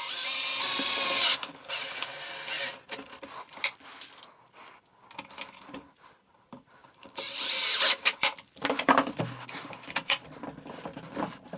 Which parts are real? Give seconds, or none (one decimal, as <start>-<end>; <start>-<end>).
2.5-5.2